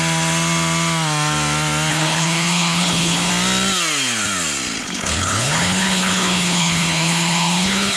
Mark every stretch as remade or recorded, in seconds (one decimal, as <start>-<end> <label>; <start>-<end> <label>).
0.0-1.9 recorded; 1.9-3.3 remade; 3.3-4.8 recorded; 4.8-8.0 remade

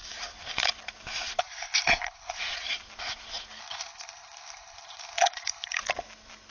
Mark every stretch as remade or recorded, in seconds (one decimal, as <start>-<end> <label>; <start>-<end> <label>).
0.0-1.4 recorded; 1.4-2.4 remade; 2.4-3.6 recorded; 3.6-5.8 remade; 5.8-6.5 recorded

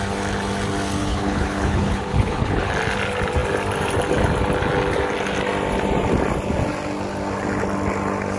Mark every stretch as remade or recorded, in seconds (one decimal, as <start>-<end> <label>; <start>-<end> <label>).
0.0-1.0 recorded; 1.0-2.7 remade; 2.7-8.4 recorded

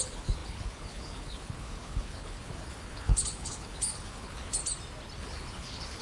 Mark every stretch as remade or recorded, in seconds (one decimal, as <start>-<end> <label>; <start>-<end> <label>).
0.0-4.6 remade; 4.6-5.2 recorded; 5.2-6.0 remade

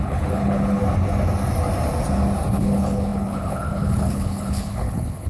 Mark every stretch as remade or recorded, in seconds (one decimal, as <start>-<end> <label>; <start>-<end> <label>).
0.0-0.8 remade; 0.8-2.6 recorded; 2.6-5.3 remade